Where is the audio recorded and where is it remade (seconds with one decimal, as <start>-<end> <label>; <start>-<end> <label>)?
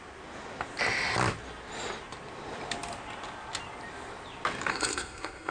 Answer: 0.0-4.7 recorded; 4.7-5.5 remade